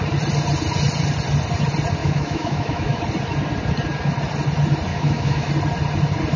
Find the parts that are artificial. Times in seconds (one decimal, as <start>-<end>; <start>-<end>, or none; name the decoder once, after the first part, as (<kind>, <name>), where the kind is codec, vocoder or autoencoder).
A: 2.0-3.0 (autoencoder, DAC-VAE); 4.9-5.5